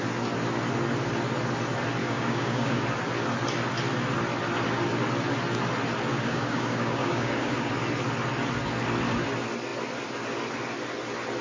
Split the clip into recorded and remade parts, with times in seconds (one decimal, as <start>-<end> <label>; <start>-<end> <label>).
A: 0.0-2.0 recorded; 2.0-2.8 remade; 2.8-6.1 recorded; 6.1-7.7 remade; 7.7-11.4 recorded